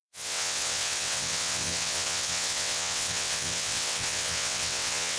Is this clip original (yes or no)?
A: no